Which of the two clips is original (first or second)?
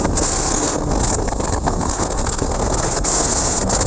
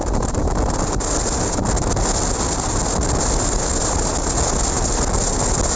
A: second